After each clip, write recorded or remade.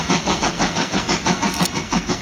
remade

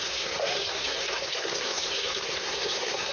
remade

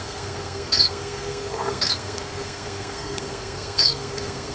remade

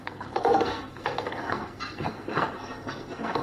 remade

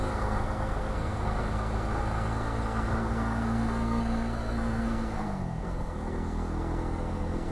remade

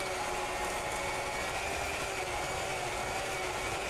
recorded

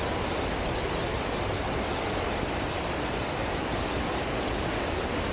recorded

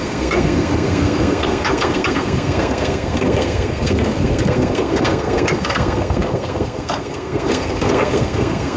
remade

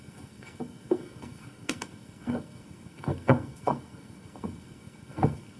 remade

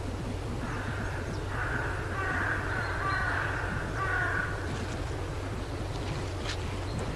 recorded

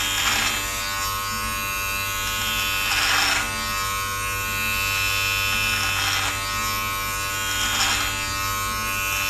recorded